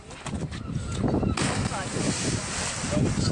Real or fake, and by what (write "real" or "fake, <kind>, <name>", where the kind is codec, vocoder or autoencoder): real